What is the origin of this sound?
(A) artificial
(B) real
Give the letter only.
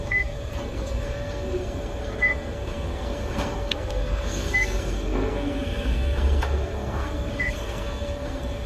A